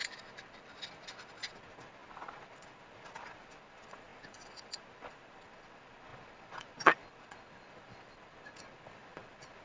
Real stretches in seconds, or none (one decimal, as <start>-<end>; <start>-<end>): none